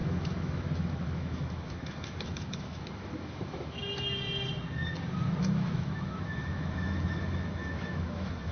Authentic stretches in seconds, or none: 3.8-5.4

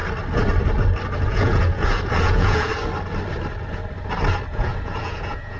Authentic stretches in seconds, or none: 0.0-1.2; 2.7-4.5

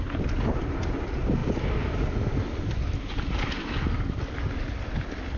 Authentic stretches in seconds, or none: 0.0-5.4

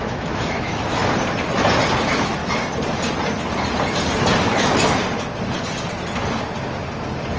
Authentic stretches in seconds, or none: 1.0-2.0; 2.4-4.4; 5.0-7.4

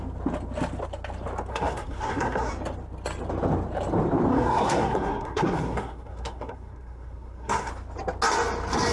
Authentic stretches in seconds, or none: 0.0-1.5; 2.5-4.3; 7.7-8.9

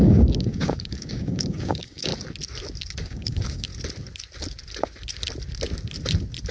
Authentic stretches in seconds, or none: 2.1-3.0; 3.7-6.5

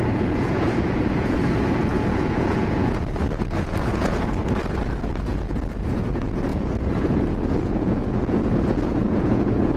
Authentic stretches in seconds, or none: none